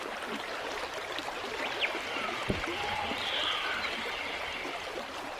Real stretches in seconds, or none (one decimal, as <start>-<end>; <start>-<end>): 0.0-2.7; 3.5-5.4